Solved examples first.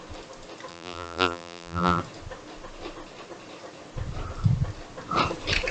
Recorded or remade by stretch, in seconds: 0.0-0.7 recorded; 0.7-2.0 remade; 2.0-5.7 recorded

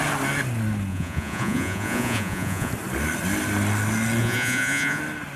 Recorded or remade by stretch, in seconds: 0.0-0.9 recorded; 0.9-2.7 remade; 2.7-4.2 recorded; 4.2-5.0 remade; 5.0-5.4 recorded

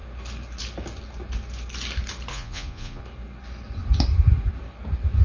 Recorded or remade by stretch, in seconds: 0.0-2.3 recorded; 2.3-3.0 remade; 3.0-5.2 recorded

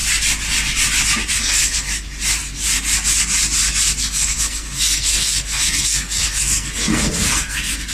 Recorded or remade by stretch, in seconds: 0.0-1.3 recorded; 1.3-1.9 remade; 1.9-4.0 recorded; 4.0-7.9 remade

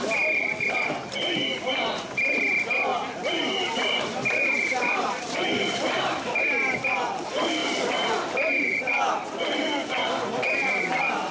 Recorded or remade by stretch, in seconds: 0.0-2.9 recorded; 2.9-6.4 remade; 6.4-7.6 recorded; 7.6-8.3 remade; 8.3-11.3 recorded

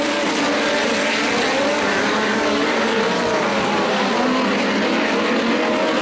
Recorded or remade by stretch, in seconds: 0.0-1.7 recorded; 1.7-3.0 remade; 3.0-3.5 recorded; 3.5-4.1 remade; 4.1-6.0 recorded

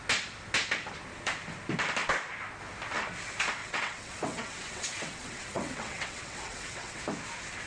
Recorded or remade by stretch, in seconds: 0.0-3.6 recorded; 3.6-7.0 remade; 7.0-7.7 recorded

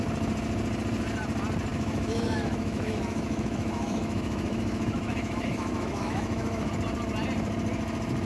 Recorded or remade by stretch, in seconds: 0.0-1.7 recorded; 1.7-6.7 remade; 6.7-8.3 recorded